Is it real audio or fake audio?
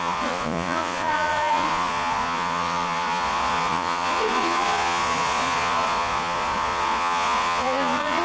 fake